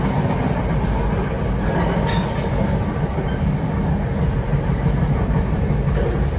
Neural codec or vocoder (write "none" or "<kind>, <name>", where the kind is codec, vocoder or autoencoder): none